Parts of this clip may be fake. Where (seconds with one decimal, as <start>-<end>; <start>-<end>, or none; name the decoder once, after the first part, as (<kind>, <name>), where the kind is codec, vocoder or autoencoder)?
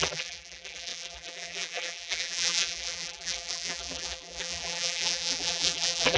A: 0.0-6.2 (vocoder, BigVGAN v2)